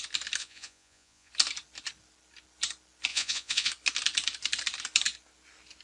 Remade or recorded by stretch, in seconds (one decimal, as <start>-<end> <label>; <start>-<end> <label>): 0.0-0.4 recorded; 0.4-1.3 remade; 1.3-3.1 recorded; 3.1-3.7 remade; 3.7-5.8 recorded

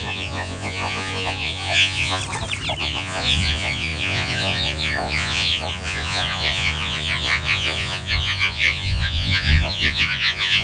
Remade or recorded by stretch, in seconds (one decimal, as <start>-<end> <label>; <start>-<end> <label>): 0.0-2.2 remade; 2.2-2.8 recorded; 2.8-10.6 remade

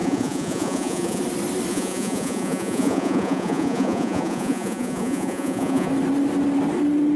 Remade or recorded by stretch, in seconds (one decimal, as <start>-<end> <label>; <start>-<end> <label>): 0.0-1.2 remade; 1.2-1.7 recorded; 1.7-5.9 remade; 5.9-7.2 recorded

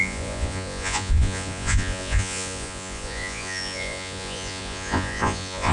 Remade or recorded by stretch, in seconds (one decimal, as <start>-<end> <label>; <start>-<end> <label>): 0.0-5.7 remade

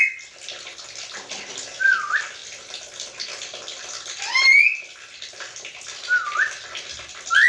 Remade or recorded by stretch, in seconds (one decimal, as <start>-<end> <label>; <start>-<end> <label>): 0.0-7.5 recorded

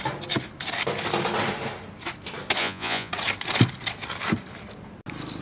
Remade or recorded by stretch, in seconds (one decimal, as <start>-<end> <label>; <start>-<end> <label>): 0.0-2.6 recorded; 2.6-3.1 remade; 3.1-5.4 recorded